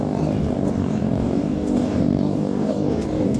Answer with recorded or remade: remade